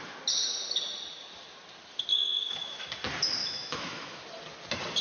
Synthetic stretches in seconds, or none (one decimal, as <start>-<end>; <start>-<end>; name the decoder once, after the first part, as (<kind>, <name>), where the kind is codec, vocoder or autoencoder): 2.1-2.8 (autoencoder, DAC-VAE); 3.4-4.2